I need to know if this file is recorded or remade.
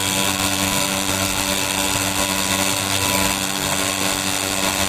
remade